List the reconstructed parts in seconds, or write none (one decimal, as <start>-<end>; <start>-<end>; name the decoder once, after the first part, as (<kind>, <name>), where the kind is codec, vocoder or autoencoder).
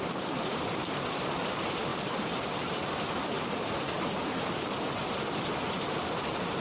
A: 0.0-5.0 (vocoder, BigVGAN v2); 5.7-6.6